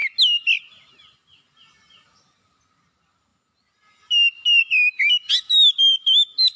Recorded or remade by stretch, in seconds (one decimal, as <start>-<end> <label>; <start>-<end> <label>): 0.0-6.6 recorded